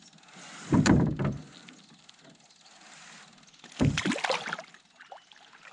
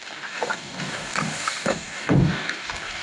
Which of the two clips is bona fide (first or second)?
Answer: first